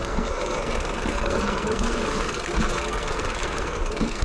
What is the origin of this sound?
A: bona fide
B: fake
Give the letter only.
B